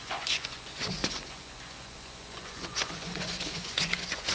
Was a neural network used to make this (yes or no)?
yes